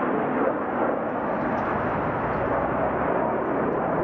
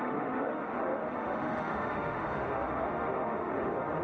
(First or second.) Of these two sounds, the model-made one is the second